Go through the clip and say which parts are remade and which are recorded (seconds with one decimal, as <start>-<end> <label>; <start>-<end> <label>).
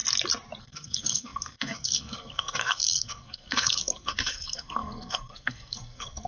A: 0.0-0.6 recorded; 0.6-6.3 remade